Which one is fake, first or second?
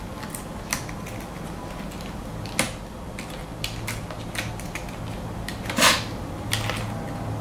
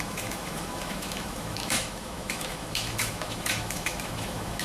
second